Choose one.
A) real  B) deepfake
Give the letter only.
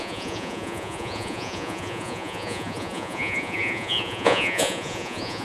B